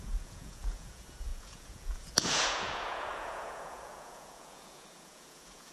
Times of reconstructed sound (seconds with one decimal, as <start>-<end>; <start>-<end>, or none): 0.0-5.7